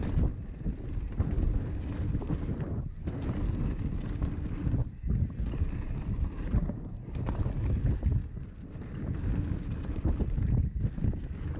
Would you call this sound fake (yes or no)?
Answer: no